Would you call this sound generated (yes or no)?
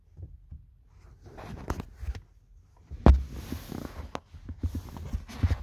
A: no